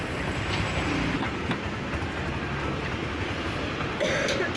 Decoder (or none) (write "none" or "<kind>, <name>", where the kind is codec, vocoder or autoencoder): none